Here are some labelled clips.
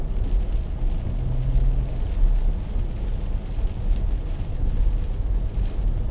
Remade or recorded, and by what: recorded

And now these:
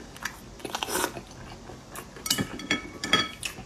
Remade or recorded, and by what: recorded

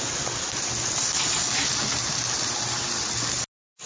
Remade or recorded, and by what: recorded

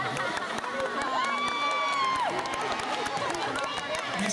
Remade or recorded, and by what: recorded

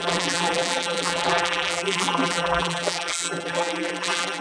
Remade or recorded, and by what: remade, vocoder, BigVGAN v2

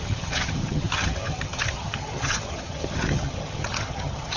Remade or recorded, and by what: remade, vocoder, HiFi-GAN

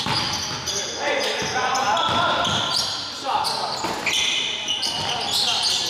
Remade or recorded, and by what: recorded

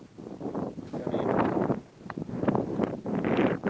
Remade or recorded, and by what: remade, vocoder, BigVGAN v2